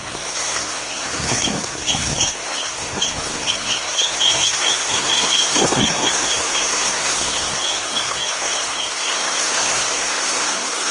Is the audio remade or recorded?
remade